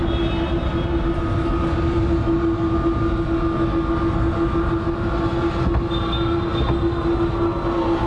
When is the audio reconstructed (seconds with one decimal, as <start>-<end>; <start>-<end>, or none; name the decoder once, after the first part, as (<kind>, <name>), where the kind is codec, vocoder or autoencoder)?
none